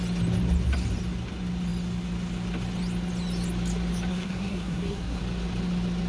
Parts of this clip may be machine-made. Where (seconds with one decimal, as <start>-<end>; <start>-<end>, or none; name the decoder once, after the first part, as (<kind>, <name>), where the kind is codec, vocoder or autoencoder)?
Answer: 4.1-5.2 (codec, SNAC)

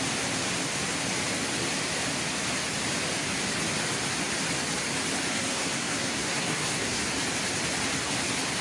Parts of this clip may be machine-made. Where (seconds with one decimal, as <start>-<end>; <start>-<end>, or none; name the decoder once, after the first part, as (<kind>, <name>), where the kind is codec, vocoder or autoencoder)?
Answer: 5.3-7.0 (codec, SNAC)

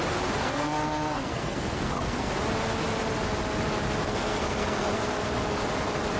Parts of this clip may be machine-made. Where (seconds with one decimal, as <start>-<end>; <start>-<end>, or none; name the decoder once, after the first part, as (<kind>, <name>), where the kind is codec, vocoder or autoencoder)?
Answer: 0.4-2.3 (codec, SNAC); 4.0-5.3